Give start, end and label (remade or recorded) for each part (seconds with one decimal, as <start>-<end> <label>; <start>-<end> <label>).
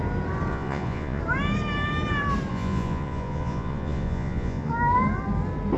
0.0-0.5 recorded; 0.5-1.2 remade; 1.2-2.5 recorded; 2.5-4.7 remade; 4.7-5.8 recorded